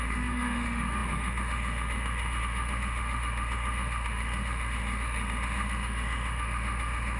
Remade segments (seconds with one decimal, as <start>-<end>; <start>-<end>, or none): 0.0-7.2